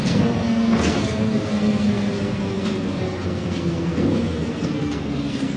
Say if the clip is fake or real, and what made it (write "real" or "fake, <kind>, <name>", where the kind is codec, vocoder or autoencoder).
fake, codec, SNAC